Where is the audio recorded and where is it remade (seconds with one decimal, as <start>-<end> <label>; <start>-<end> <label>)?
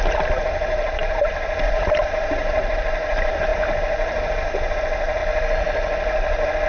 0.0-5.2 remade; 5.2-6.7 recorded